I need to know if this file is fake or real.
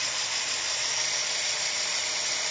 fake